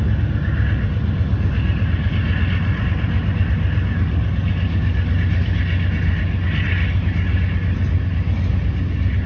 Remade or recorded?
recorded